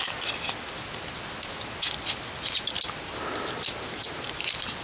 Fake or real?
real